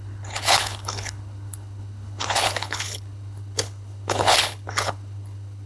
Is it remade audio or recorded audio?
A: remade